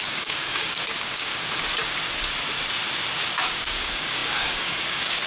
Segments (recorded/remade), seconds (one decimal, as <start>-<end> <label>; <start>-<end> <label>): 0.0-1.3 remade; 1.3-3.3 recorded; 3.3-5.3 remade